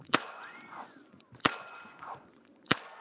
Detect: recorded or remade remade